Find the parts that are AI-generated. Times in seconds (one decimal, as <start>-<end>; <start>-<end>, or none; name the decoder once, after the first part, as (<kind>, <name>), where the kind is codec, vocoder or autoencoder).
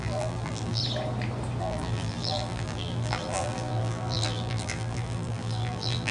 0.0-0.8 (vocoder, BigVGAN v2); 1.6-6.1